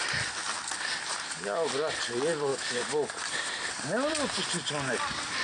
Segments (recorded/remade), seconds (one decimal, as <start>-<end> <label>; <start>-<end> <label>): 0.0-5.4 recorded